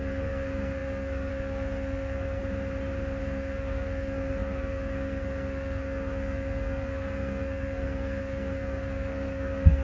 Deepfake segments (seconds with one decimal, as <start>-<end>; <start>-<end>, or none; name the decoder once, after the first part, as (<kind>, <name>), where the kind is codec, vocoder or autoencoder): 0.0-2.4 (codec, SNAC); 3.2-9.8

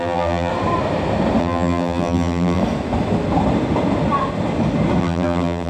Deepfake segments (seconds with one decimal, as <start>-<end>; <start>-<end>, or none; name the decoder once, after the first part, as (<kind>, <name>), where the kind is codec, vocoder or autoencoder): 0.0-0.5 (vocoder, BigVGAN v2); 1.4-2.6; 5.0-5.7

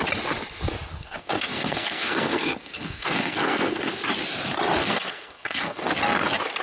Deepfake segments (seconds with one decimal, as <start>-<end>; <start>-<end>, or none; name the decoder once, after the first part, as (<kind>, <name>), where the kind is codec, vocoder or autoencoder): 0.9-3.9 (codec, SNAC); 4.8-5.9

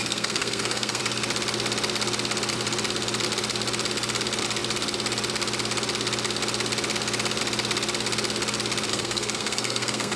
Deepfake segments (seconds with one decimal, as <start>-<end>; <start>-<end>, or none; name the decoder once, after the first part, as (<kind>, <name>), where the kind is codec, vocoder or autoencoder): 0.0-1.0 (codec, SNAC); 8.9-10.2

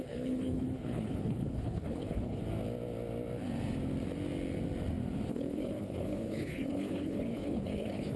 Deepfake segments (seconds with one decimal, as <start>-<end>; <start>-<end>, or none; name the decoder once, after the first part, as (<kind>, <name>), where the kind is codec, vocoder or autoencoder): 0.0-2.4 (codec, HILCodec); 5.3-8.2

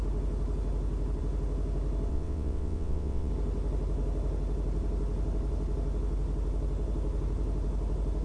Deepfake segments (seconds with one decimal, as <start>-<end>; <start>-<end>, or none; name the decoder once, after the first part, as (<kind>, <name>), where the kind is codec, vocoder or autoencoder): 2.1-3.3 (vocoder, WaveNeXt)

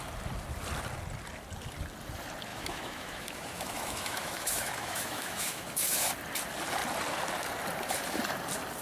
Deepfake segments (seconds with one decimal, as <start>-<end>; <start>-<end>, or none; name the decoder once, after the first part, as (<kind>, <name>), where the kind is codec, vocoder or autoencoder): 2.5-6.1 (autoencoder, DAC-VAE)